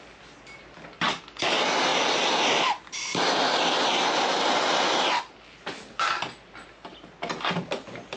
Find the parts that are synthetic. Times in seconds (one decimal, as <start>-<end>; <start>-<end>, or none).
none